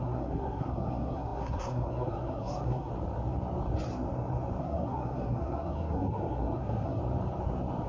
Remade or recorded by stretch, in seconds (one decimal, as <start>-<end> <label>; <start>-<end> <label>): 0.0-2.9 remade; 2.9-4.6 recorded; 4.6-7.0 remade; 7.0-7.9 recorded